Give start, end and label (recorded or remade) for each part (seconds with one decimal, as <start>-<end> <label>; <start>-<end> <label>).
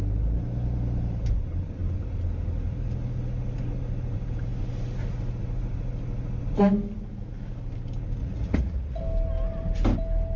0.0-8.2 recorded; 8.2-9.0 remade; 9.0-10.4 recorded